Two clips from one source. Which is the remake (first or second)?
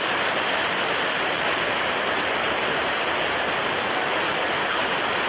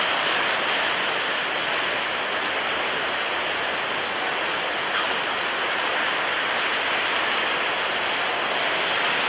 first